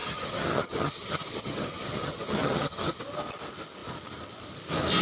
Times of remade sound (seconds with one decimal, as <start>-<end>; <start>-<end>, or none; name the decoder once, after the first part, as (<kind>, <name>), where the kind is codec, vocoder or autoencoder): 0.0-3.0 (vocoder, HiFi-GAN)